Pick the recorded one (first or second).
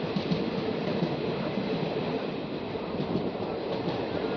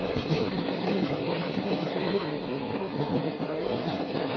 first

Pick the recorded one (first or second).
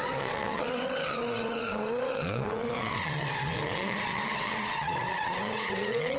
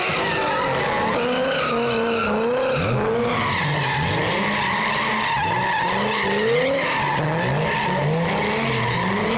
second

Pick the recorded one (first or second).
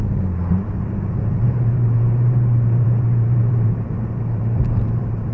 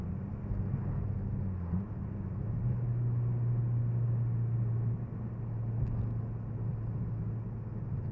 second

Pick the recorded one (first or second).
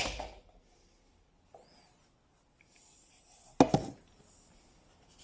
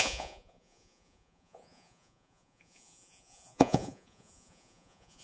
first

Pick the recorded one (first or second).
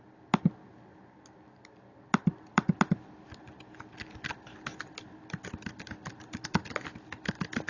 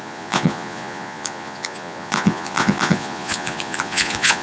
first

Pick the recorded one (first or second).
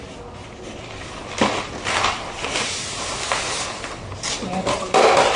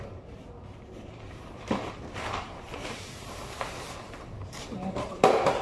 first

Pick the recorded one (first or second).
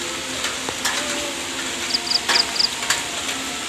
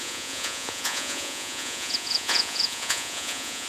first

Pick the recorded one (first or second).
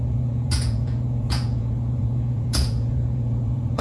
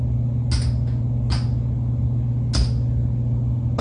second